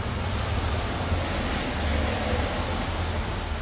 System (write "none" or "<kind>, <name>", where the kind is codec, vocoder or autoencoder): none